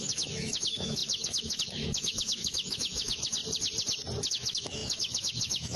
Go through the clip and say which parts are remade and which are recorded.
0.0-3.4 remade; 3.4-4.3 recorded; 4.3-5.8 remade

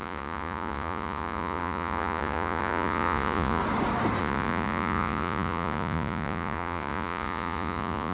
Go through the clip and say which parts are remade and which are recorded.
0.0-3.6 remade; 3.6-4.2 recorded; 4.2-8.1 remade

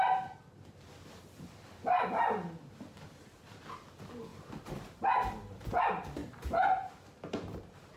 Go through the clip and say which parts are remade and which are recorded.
0.0-4.3 recorded; 4.3-5.8 remade; 5.8-6.2 recorded; 6.2-6.9 remade; 6.9-8.0 recorded

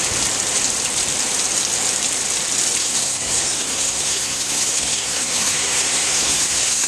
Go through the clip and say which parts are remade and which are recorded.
0.0-2.8 recorded; 2.8-6.9 remade